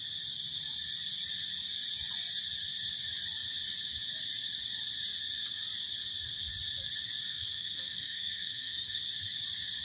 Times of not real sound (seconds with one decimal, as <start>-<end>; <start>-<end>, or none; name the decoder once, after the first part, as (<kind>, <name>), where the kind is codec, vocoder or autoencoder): 7.3-9.0 (codec, SNAC)